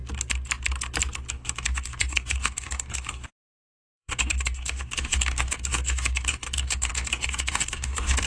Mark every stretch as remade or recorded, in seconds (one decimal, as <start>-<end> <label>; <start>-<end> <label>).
0.0-1.3 recorded; 1.3-8.3 remade